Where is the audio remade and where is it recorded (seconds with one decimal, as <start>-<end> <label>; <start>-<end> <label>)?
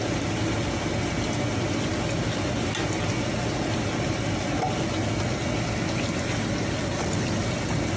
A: 0.0-8.0 recorded